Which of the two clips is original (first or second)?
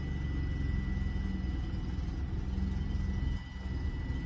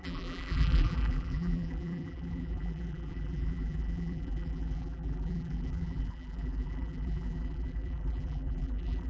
first